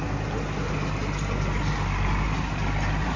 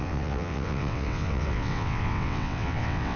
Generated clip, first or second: second